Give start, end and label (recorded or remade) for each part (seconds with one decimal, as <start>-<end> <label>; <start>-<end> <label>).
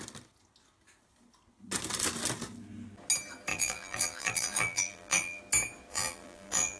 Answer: 0.0-3.5 recorded; 3.5-5.4 remade; 5.4-5.9 recorded; 5.9-6.8 remade